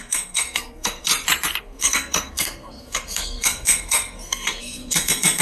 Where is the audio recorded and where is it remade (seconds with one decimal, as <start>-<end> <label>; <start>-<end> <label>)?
0.0-1.1 remade; 1.1-1.6 recorded; 1.6-5.4 remade